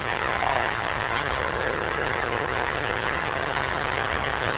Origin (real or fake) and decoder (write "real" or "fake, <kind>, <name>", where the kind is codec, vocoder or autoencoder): fake, vocoder, HiFi-GAN